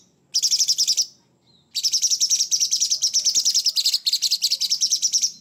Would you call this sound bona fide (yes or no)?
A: yes